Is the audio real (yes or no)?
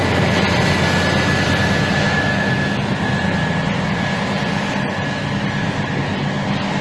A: yes